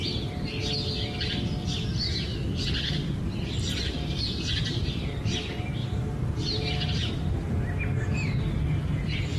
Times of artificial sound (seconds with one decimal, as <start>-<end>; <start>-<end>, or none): 5.8-7.1